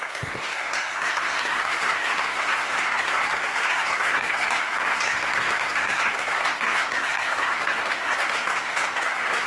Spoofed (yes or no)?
yes